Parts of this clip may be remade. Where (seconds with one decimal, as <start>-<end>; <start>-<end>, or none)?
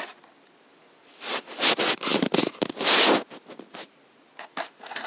none